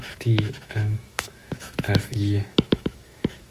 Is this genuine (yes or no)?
no